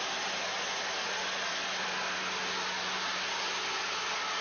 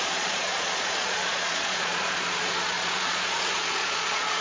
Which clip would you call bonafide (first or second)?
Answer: first